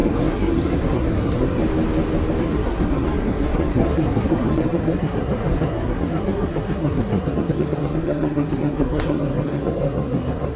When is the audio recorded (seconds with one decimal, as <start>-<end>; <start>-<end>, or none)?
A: 1.6-2.4